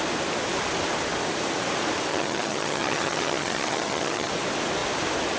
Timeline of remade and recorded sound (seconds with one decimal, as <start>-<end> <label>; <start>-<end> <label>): 0.0-2.1 recorded; 2.1-4.3 remade; 4.3-5.4 recorded